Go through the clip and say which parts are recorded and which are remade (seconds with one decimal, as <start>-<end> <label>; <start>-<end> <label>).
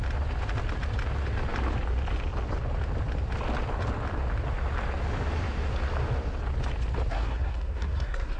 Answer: 0.0-7.1 recorded; 7.1-8.4 remade